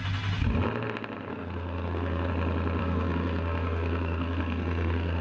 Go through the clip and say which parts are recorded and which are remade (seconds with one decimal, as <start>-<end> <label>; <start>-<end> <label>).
0.0-1.3 recorded; 1.3-2.3 remade; 2.3-2.8 recorded; 2.8-5.2 remade